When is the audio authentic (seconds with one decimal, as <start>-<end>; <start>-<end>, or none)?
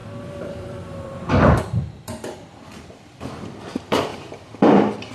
none